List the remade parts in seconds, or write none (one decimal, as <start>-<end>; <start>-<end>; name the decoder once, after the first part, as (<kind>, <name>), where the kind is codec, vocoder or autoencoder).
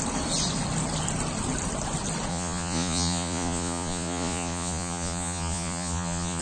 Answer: 2.3-6.4 (vocoder, Vocos)